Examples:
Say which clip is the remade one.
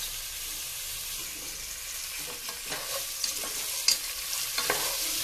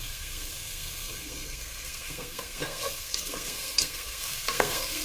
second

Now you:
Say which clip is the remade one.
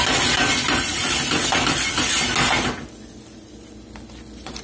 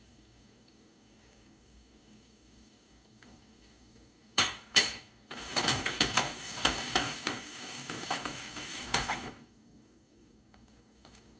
second